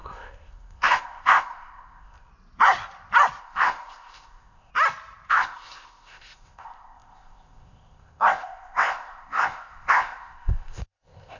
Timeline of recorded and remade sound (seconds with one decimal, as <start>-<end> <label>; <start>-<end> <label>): 0.0-2.3 remade; 2.3-3.4 recorded; 3.4-4.7 remade; 4.7-5.3 recorded; 5.3-11.4 remade

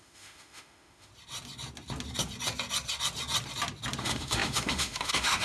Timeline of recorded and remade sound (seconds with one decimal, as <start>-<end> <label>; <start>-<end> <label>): 0.0-1.1 remade; 1.1-4.0 recorded; 4.0-5.4 remade

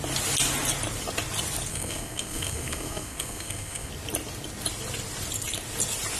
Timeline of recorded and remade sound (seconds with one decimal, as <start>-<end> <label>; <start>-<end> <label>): 0.0-1.7 recorded; 1.7-3.9 remade; 3.9-6.2 recorded

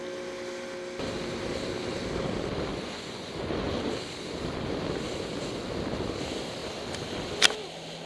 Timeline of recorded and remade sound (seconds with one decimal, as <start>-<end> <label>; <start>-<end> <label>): 0.0-2.7 recorded; 2.7-3.7 remade; 3.7-8.1 recorded

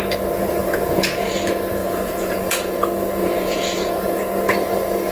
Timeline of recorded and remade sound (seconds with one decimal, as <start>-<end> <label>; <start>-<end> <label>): 0.0-0.6 recorded; 0.6-1.3 remade; 1.3-1.8 recorded; 1.8-2.8 remade; 2.8-3.2 recorded; 3.2-4.2 remade; 4.2-5.1 recorded